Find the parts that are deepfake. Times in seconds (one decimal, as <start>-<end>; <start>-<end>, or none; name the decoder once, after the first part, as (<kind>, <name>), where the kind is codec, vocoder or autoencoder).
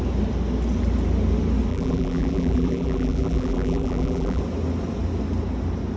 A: 1.7-4.4 (vocoder, BigVGAN v2)